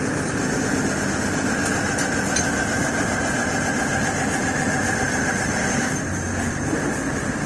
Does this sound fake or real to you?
real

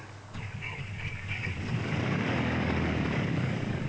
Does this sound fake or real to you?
fake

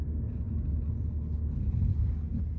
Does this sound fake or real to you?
real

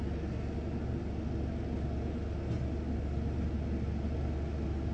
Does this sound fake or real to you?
real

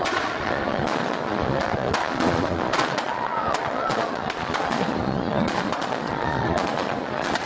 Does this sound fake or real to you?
fake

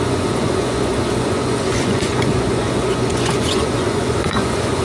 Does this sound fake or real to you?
fake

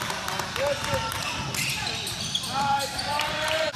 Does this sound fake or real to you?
real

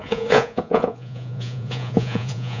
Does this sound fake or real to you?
fake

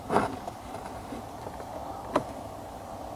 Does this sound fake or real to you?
real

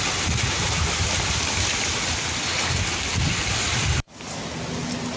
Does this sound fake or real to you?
real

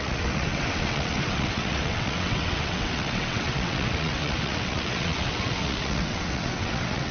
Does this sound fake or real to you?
fake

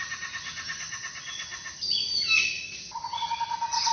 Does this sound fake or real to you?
real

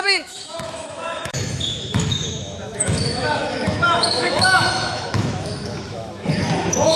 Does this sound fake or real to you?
fake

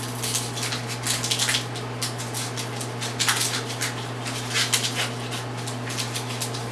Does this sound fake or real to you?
real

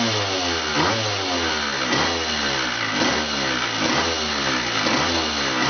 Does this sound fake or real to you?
real